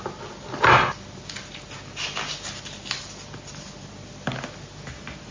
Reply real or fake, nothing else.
real